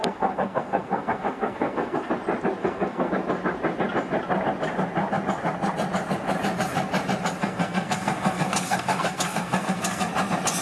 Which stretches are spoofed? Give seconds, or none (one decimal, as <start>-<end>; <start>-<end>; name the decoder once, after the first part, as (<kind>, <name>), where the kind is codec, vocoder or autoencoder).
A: 0.0-2.1 (codec, SNAC); 2.6-3.1; 7.4-10.1